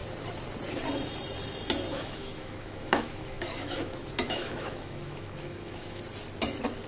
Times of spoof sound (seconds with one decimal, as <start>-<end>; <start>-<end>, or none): 1.9-6.0